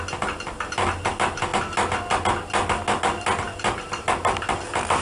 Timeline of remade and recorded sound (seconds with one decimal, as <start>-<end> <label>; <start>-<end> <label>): 0.0-5.0 recorded